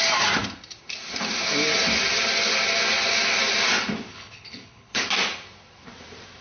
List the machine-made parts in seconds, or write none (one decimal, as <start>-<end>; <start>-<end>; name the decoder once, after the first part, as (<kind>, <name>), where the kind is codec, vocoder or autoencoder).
4.1-5.0 (codec, HILCodec)

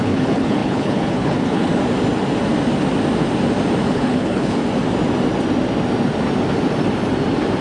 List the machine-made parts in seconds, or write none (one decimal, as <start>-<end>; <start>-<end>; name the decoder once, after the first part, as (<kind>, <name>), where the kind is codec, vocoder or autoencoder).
0.0-1.7 (codec, HILCodec); 3.9-4.6

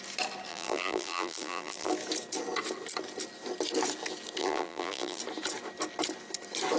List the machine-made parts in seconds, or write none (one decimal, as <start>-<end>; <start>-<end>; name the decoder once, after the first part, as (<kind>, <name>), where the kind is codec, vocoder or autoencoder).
0.5-1.9 (vocoder, BigVGAN v2); 4.4-5.2

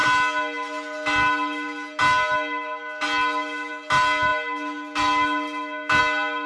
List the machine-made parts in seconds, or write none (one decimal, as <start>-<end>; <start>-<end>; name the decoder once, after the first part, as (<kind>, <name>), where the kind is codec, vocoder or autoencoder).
none

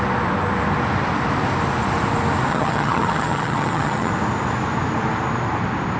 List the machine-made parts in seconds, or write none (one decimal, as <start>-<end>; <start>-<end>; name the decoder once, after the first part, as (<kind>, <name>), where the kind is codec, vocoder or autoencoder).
2.5-4.1 (vocoder, HiFi-GAN)